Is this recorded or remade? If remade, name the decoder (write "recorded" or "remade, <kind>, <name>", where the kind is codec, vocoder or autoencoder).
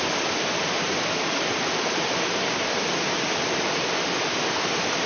recorded